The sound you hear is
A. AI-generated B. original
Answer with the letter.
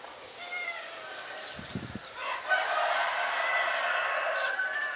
B